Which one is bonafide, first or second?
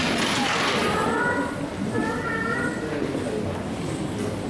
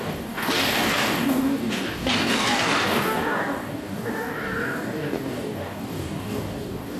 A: first